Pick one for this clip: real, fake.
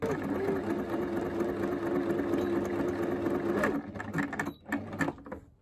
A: real